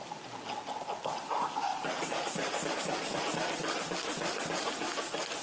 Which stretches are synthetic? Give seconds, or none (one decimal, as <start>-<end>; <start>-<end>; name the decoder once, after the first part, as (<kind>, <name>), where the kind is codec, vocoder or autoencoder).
1.7-3.2 (vocoder, BigVGAN v2); 3.6-4.2